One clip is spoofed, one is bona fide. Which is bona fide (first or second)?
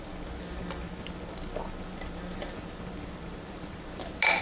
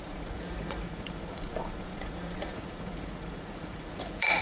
first